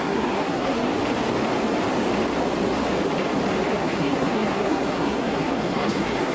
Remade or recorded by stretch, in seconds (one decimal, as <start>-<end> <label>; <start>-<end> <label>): 0.0-0.9 remade; 0.9-3.7 recorded; 3.7-6.3 remade